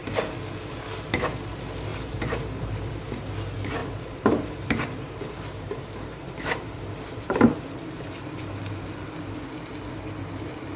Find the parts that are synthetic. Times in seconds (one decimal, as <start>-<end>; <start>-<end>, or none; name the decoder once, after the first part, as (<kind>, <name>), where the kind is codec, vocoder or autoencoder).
1.9-3.3 (vocoder, BigVGAN v2); 3.8-7.5